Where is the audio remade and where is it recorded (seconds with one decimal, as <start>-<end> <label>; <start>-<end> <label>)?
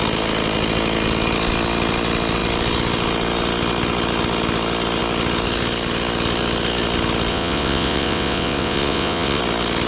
0.0-7.3 recorded; 7.3-9.4 remade; 9.4-9.9 recorded